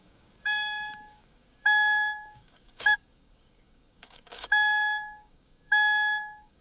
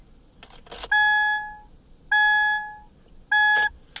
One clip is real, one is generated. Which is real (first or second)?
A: second